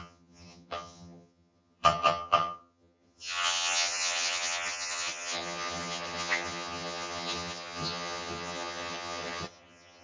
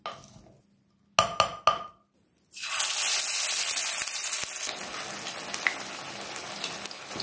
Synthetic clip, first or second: first